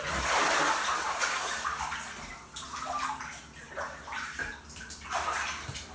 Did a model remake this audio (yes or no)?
no